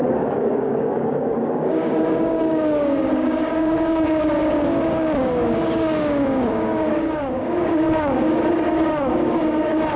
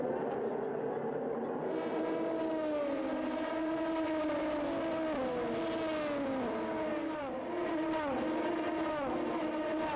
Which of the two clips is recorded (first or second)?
second